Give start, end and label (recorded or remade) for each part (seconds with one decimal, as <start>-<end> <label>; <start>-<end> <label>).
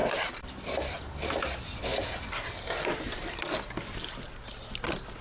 0.0-5.2 recorded